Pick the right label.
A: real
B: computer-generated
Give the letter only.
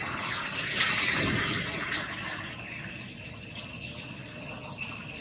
A